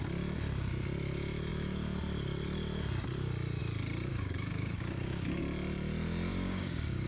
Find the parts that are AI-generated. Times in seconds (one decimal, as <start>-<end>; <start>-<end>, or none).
4.1-5.4; 6.3-7.1